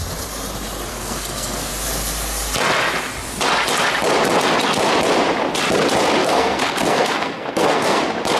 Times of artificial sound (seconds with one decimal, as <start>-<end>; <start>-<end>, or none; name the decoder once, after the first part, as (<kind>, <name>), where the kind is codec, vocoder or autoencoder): 0.9-1.7 (codec, SNAC); 6.2-8.0